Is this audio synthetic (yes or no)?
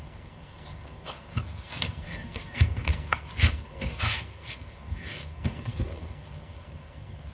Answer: yes